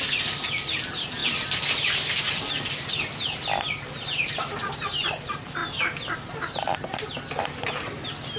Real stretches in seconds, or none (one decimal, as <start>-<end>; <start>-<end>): 0.0-8.4